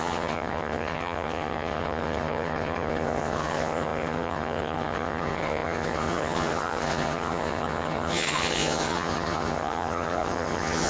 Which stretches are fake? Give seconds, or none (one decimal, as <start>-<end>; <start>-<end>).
0.0-10.9